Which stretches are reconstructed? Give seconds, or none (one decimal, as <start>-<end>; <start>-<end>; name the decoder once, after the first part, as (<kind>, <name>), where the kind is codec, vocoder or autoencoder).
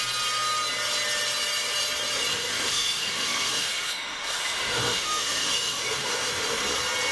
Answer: 2.3-6.6 (autoencoder, DAC-VAE)